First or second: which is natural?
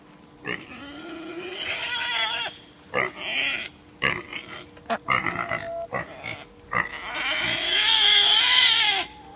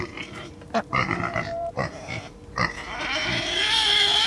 first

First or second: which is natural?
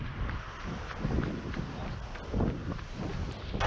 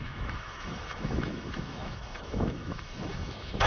first